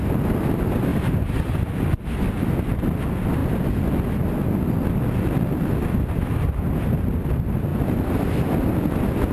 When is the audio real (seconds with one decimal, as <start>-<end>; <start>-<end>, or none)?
0.0-0.9; 1.5-9.3